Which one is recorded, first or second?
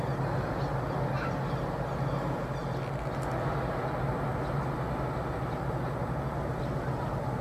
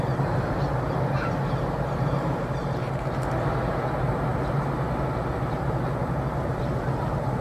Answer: first